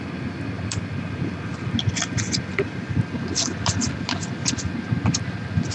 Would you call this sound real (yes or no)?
yes